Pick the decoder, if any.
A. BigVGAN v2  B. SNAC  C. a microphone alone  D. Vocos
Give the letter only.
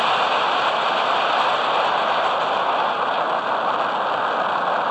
C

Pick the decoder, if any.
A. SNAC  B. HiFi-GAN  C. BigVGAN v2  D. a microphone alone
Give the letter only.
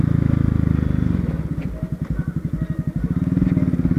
D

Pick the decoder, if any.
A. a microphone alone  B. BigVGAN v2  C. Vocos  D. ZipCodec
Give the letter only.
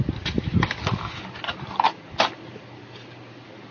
A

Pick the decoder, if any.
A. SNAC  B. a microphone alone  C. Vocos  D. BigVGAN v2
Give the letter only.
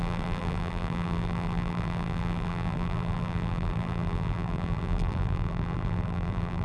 D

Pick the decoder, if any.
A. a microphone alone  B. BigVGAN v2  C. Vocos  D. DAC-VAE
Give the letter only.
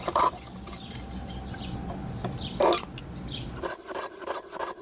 A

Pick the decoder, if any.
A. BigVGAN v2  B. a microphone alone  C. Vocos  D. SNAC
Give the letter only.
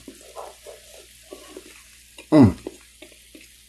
B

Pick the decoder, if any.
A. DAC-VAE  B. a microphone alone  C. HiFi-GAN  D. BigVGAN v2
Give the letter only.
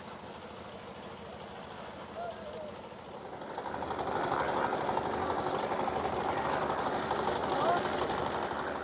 B